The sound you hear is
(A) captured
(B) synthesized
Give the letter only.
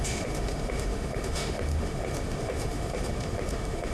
B